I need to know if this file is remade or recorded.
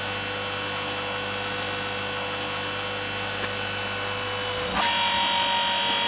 recorded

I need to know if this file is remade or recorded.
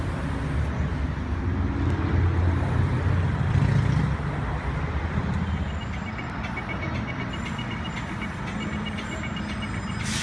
recorded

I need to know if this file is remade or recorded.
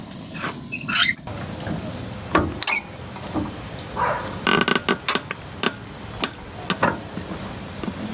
recorded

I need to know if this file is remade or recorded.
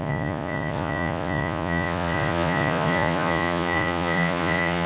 remade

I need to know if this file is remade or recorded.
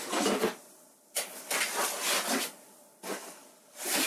recorded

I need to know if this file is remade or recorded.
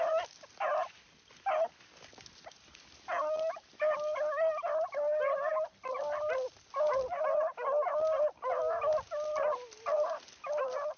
recorded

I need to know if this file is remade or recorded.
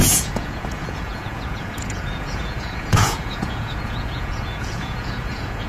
remade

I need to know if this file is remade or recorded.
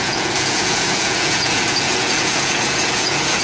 remade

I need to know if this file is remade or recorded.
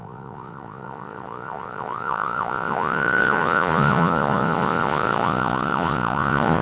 remade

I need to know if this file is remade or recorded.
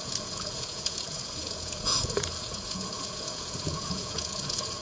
remade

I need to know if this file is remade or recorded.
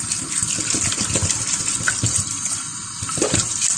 recorded